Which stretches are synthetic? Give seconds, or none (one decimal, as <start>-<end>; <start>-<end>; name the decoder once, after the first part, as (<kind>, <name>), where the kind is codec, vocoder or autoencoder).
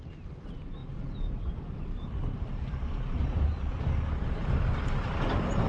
0.8-3.8 (vocoder, BigVGAN v2)